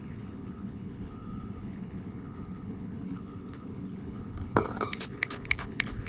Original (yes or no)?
no